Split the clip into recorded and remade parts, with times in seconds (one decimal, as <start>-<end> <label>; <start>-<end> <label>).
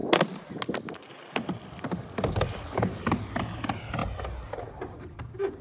0.0-5.6 recorded